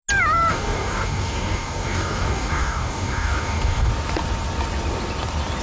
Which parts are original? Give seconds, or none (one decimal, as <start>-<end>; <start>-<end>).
0.0-0.5; 3.9-5.6